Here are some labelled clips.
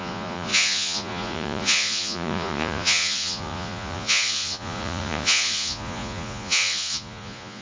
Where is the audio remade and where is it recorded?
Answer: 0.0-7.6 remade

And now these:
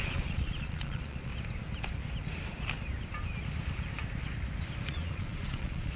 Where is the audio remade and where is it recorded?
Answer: 0.0-1.3 remade; 1.3-4.9 recorded; 4.9-6.0 remade

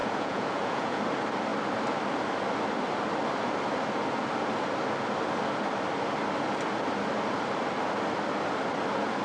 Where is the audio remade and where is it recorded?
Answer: 0.0-1.0 remade; 1.0-9.2 recorded

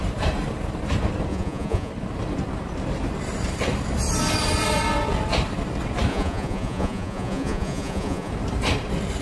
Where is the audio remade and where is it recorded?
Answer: 0.0-1.3 recorded; 1.3-1.9 remade; 1.9-6.1 recorded; 6.1-8.3 remade; 8.3-9.2 recorded